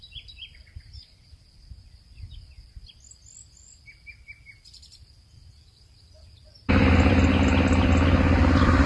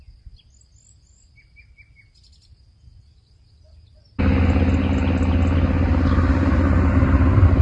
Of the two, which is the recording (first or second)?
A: second